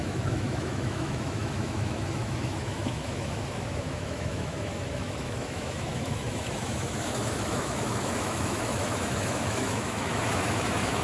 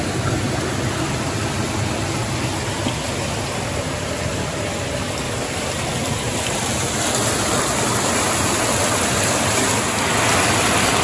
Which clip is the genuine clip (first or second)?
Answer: second